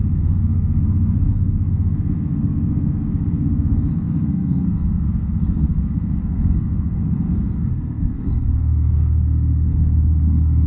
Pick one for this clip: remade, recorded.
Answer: remade